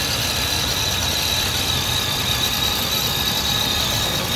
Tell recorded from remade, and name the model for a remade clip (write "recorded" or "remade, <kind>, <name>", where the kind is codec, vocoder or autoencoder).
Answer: recorded